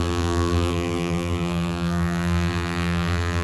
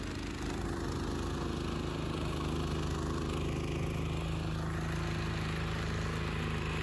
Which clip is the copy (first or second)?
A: first